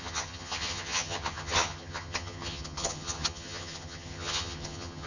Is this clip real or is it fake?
fake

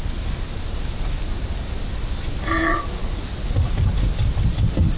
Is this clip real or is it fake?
real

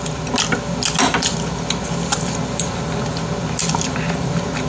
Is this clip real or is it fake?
real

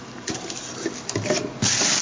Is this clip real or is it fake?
real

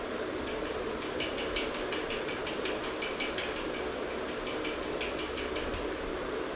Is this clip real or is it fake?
real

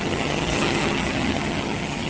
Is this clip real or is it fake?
fake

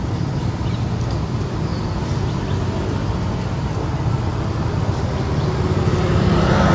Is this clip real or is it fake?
real